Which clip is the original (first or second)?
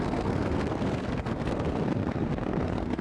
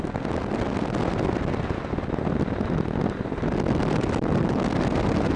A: second